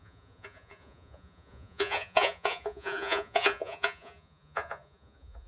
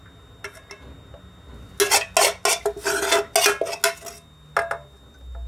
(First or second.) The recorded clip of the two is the second